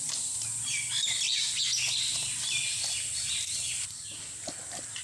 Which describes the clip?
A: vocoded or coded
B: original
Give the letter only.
B